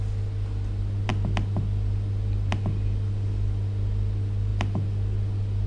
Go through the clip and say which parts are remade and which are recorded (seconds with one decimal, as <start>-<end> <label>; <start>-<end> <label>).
0.0-5.7 recorded